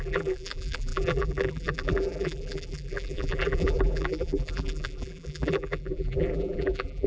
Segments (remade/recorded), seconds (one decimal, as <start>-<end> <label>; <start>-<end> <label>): 0.0-7.1 remade